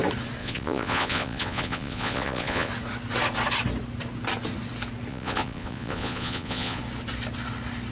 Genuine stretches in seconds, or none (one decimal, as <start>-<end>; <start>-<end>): 0.0-0.4; 2.7-5.1; 6.8-7.9